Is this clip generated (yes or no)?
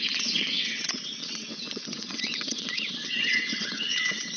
yes